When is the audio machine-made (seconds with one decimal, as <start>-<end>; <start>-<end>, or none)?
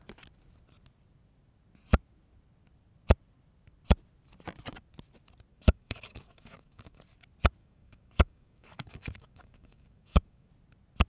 5.5-7.0; 7.6-10.5